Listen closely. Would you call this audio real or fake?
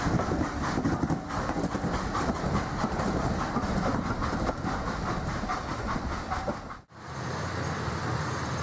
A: real